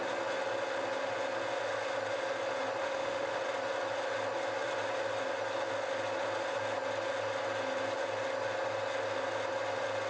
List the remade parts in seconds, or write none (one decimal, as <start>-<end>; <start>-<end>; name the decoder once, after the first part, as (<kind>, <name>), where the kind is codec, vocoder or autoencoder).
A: 2.8-3.4 (autoencoder, DAC-VAE)